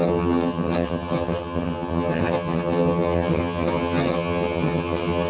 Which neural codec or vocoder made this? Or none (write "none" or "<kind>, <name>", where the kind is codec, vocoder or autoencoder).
vocoder, HiFi-GAN